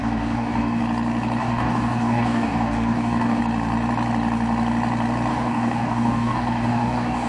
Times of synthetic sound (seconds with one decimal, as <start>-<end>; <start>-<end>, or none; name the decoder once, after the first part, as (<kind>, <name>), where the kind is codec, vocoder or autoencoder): 0.0-0.8 (codec, DAC); 1.4-3.4; 5.3-7.3